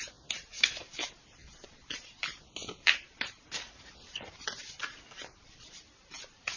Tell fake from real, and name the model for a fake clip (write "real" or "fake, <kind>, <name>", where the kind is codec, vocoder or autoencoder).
real